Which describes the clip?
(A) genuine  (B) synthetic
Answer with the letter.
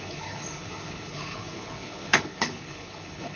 B